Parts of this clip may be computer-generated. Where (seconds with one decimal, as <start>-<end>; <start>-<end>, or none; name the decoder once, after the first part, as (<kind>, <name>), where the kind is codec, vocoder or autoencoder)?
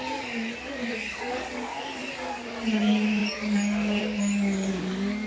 0.0-5.3 (codec, DAC)